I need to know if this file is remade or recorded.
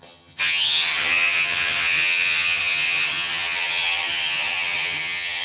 remade